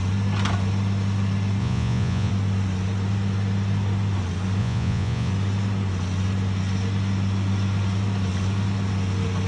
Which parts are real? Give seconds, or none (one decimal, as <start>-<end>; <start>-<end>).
0.0-1.6; 2.3-4.6; 5.3-9.5